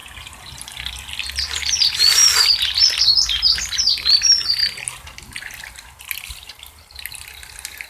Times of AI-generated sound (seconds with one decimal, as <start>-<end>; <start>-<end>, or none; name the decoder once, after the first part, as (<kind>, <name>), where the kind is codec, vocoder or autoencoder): none

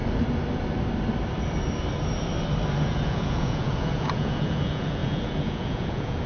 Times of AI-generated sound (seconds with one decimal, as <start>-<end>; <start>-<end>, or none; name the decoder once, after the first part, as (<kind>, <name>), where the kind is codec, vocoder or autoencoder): 2.8-6.3 (vocoder, Vocos)